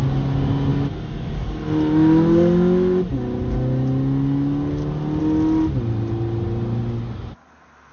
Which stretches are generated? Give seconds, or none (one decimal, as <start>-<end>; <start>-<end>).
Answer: none